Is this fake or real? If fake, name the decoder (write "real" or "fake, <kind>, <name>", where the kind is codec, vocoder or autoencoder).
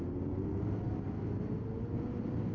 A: real